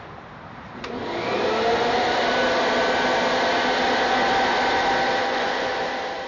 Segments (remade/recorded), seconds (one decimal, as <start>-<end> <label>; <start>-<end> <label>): 0.0-5.2 recorded; 5.2-5.7 remade; 5.7-6.3 recorded